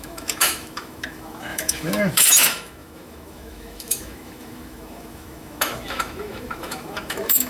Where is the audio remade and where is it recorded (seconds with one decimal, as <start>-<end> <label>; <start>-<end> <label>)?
0.0-7.5 remade